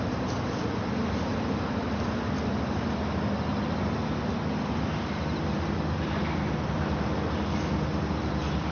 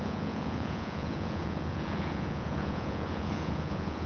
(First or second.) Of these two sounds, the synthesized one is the second